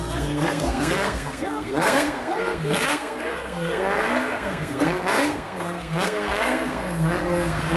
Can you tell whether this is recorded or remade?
remade